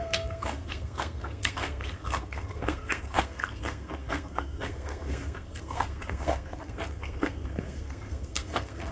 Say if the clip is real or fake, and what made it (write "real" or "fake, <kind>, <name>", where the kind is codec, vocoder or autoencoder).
fake, codec, SNAC